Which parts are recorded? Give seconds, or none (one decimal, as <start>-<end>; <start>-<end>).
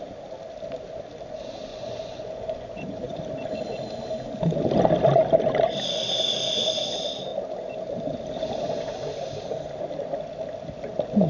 0.0-1.7; 3.2-11.3